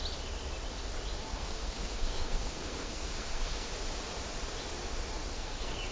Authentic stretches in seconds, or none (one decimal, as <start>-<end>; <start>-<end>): 0.0-1.3; 3.7-5.3